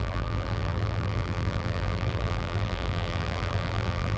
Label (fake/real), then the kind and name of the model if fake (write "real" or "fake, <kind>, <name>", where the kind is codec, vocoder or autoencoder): fake, vocoder, BigVGAN v2